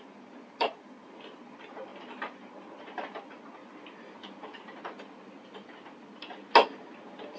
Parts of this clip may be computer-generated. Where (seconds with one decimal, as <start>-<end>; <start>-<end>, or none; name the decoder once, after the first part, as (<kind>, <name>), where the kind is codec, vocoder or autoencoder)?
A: none